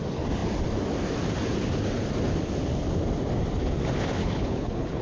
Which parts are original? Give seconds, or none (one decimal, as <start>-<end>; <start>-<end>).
0.0-4.2